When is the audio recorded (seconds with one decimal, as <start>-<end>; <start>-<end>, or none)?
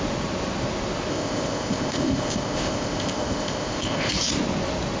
0.0-1.1; 4.1-5.0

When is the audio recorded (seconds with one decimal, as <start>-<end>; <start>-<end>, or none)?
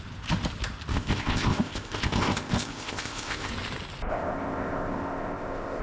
0.0-0.9; 3.5-4.1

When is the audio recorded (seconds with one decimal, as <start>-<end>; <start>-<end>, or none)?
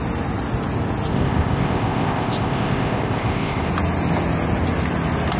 0.0-1.1; 3.7-5.4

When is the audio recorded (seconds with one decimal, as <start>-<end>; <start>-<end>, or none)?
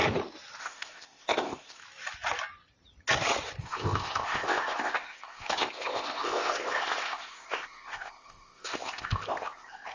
0.0-0.6; 1.8-3.6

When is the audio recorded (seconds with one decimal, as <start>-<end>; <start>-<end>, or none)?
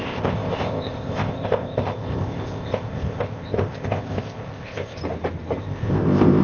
5.0-5.6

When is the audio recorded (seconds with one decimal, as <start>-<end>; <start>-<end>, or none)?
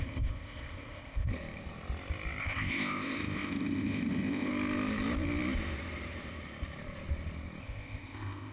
1.3-2.4; 4.5-7.6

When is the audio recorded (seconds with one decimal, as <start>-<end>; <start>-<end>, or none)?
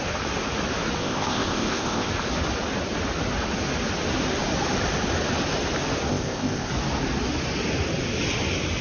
0.0-1.0; 2.1-6.1; 6.7-8.8